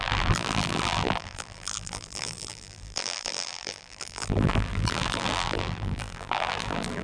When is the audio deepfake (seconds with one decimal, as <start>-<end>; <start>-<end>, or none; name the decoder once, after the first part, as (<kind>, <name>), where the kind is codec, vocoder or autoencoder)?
0.0-7.0 (vocoder, BigVGAN v2)